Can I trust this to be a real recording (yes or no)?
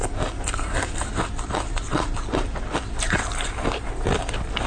yes